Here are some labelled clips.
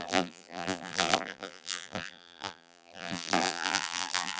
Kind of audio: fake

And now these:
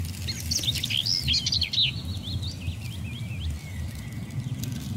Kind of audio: real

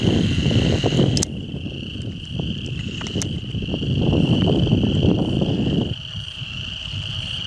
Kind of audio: real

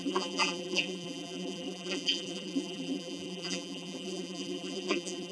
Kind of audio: fake